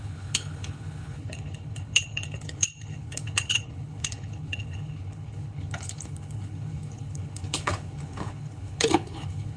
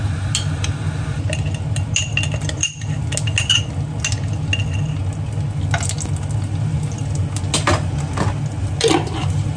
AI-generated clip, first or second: first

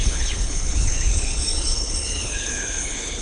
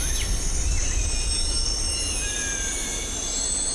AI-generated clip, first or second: first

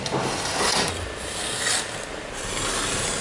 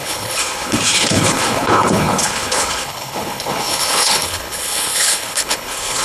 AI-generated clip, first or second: second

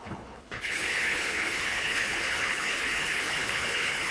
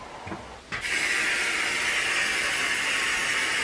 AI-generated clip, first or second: first